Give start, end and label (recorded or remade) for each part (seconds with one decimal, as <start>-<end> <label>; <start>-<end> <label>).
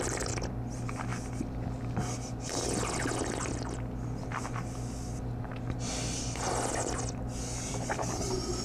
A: 0.0-8.6 recorded